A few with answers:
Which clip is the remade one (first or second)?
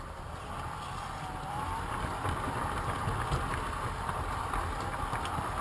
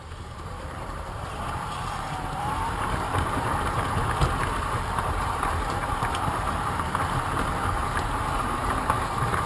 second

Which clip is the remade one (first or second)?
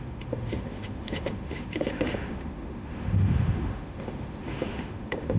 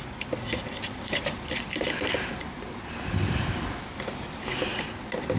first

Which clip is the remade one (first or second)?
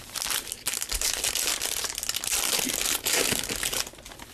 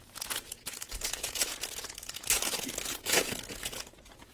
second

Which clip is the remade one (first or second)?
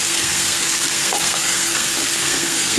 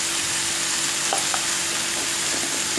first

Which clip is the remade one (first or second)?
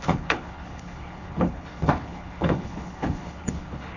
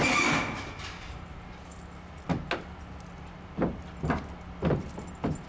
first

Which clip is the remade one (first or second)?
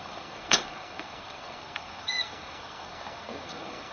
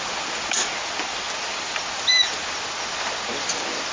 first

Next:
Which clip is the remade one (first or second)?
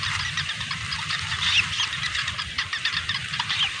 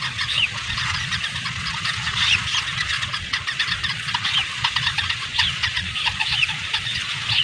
second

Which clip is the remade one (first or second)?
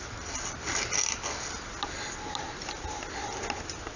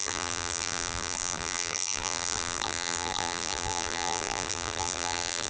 second